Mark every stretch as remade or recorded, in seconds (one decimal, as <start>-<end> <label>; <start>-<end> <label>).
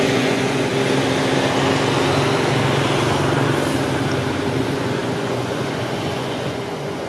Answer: 0.0-0.7 remade; 0.7-4.6 recorded; 4.6-7.1 remade